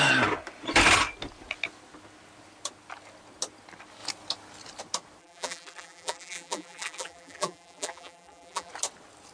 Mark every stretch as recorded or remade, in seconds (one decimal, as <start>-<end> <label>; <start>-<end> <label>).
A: 0.0-5.2 recorded; 5.2-8.7 remade; 8.7-9.3 recorded